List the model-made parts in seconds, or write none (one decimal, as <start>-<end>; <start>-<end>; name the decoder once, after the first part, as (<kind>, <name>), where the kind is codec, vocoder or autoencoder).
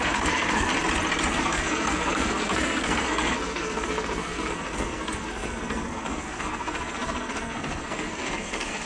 0.0-0.7 (codec, SNAC); 1.3-8.9